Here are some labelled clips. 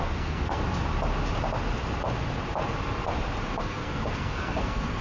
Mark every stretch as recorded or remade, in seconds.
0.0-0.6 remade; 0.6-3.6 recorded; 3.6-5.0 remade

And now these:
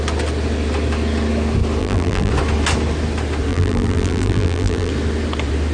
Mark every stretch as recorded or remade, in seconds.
0.0-1.8 recorded; 1.8-2.3 remade; 2.3-3.5 recorded; 3.5-4.9 remade; 4.9-5.7 recorded